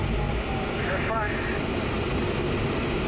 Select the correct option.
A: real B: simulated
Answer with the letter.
A